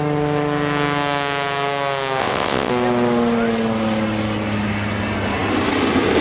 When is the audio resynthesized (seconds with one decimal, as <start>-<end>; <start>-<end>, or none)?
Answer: 2.2-2.7